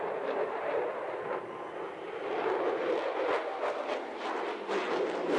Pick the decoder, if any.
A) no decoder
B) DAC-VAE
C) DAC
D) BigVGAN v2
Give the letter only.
D